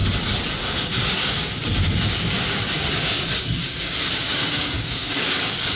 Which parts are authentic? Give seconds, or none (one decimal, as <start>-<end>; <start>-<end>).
0.0-0.6